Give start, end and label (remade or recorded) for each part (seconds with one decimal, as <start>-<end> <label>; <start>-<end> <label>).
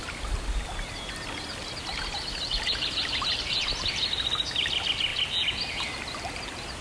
0.0-6.8 recorded